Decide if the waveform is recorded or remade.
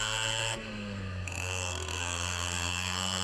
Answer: remade